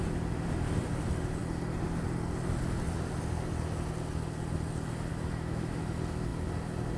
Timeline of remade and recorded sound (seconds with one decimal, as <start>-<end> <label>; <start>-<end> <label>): 0.0-5.1 recorded; 5.1-5.8 remade; 5.8-7.0 recorded